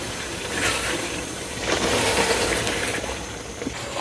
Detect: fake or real fake